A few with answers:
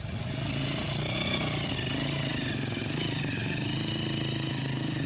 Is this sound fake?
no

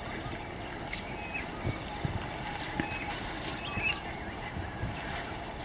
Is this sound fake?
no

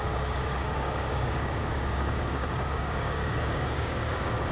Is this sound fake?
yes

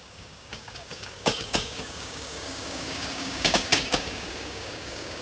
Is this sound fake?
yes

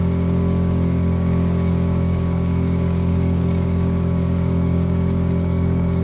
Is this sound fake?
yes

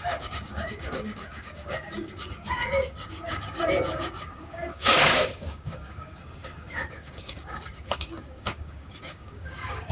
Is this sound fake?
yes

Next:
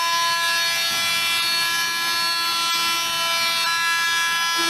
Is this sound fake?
no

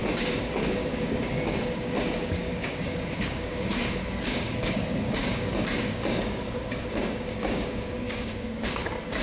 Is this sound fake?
yes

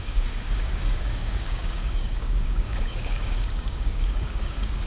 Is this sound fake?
yes